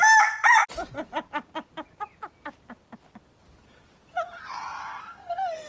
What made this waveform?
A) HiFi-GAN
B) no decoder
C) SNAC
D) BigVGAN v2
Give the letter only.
B